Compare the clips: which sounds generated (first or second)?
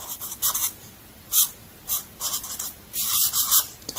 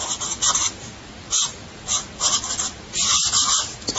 first